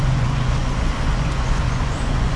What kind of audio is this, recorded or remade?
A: remade